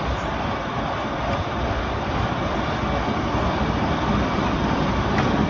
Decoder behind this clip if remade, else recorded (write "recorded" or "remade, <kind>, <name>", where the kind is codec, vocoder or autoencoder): recorded